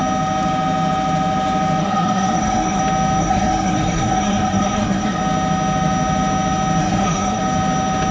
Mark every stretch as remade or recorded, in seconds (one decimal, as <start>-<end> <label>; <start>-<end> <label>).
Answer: 0.0-1.8 recorded; 1.8-2.8 remade; 2.8-3.2 recorded; 3.2-5.2 remade; 5.2-6.8 recorded; 6.8-7.4 remade; 7.4-8.1 recorded

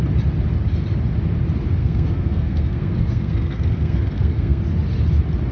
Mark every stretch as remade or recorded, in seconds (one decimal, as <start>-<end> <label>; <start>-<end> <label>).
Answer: 0.0-1.8 recorded; 1.8-4.6 remade; 4.6-5.5 recorded